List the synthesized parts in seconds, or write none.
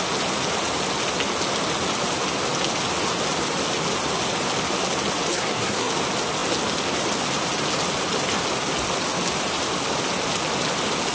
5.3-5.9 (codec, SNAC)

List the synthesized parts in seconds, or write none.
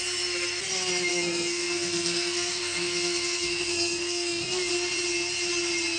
1.1-4.7 (codec, SNAC)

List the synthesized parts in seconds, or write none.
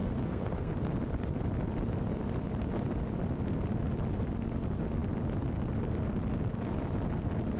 0.0-0.7 (codec, SNAC)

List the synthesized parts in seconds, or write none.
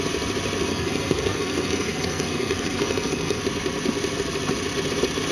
0.7-3.4 (codec, SNAC)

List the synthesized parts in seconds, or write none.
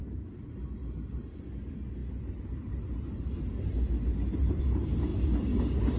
none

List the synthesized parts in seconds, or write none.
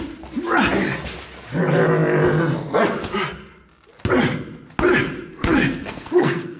5.3-6.6 (codec, SNAC)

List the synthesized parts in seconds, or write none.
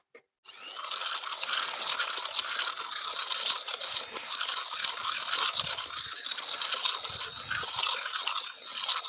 none